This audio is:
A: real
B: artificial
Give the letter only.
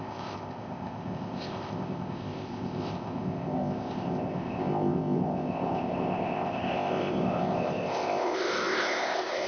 B